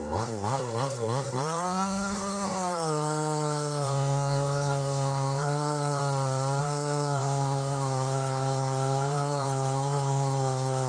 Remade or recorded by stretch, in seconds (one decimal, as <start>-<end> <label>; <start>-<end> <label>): 0.0-6.0 remade; 6.0-6.6 recorded; 6.6-10.9 remade